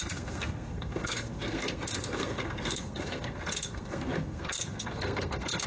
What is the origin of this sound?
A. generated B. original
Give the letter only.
A